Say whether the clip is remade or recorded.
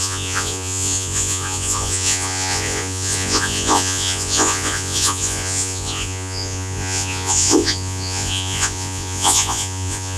remade